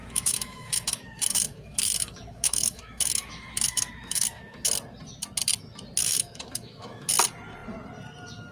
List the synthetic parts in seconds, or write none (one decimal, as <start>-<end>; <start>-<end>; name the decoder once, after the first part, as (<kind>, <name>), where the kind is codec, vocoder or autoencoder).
0.0-4.7 (autoencoder, DAC-VAE); 6.0-7.1